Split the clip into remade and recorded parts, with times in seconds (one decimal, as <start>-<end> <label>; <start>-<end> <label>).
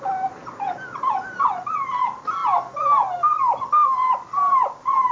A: 0.0-5.1 recorded